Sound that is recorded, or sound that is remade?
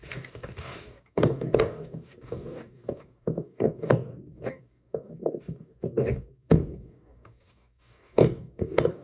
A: remade